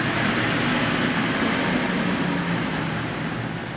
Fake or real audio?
real